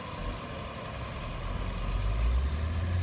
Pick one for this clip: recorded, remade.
recorded